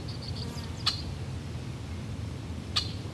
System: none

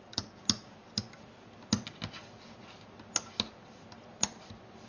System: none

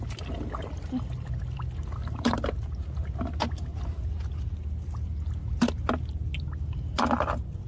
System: none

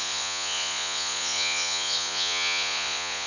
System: vocoder, Vocos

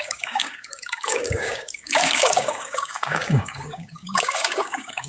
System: codec, DAC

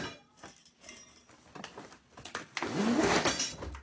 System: none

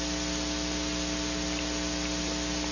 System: none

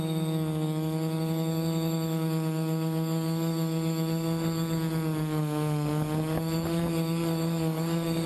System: codec, DAC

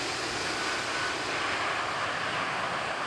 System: none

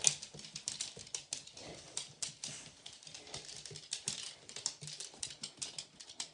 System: vocoder, BigVGAN v2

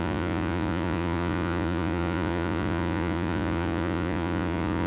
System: vocoder, Vocos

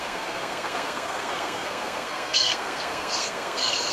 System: codec, SNAC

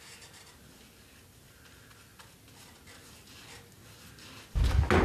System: none